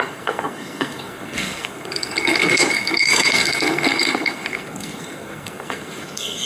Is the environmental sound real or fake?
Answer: fake